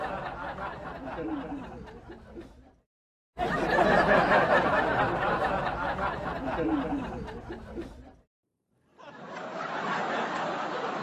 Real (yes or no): yes